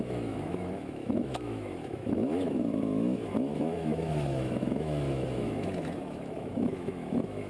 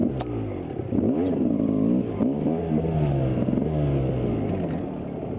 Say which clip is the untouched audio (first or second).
second